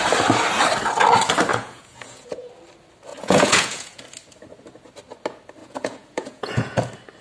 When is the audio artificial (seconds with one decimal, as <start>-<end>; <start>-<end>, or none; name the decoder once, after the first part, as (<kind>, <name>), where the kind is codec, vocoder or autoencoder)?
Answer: 1.5-2.5 (vocoder, Vocos); 3.1-4.0; 5.6-6.8